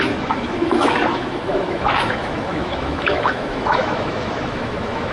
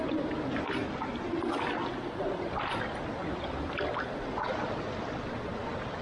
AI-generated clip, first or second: first